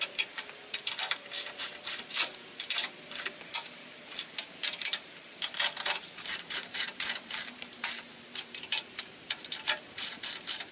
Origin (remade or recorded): remade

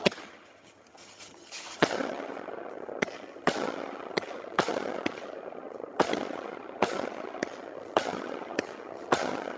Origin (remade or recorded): remade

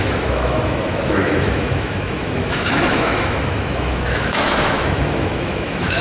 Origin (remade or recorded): remade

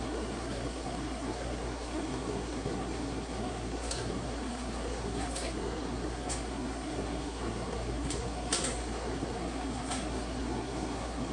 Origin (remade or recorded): remade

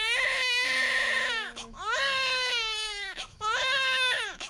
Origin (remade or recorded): remade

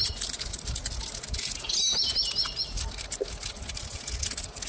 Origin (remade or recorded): recorded